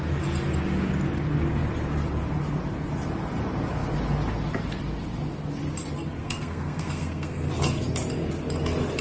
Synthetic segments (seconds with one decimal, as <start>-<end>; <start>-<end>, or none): 6.2-7.5